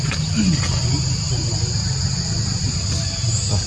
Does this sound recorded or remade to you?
recorded